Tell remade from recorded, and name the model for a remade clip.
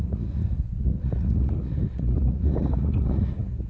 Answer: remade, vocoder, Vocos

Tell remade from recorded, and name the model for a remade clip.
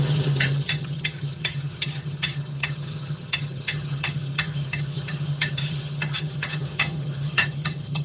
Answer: remade, vocoder, HiFi-GAN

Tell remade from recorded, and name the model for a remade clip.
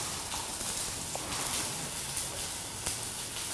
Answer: recorded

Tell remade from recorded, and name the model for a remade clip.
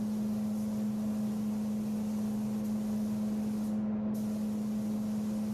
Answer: recorded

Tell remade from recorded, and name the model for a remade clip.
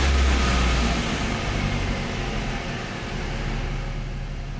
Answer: recorded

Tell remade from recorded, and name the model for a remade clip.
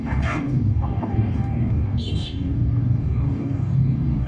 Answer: remade, codec, DAC